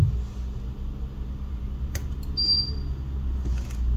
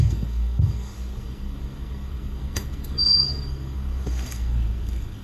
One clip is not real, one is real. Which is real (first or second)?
first